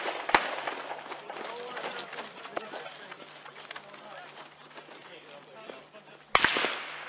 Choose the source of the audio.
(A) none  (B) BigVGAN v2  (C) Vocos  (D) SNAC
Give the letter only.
A